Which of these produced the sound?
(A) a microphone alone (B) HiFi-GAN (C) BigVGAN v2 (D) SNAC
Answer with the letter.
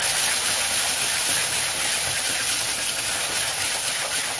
A